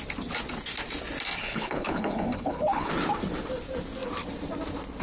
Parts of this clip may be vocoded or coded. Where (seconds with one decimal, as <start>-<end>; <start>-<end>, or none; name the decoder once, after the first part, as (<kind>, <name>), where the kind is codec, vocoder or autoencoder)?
1.4-2.9 (codec, HILCodec)